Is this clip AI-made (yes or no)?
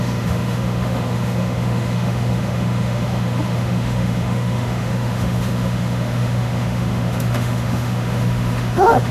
yes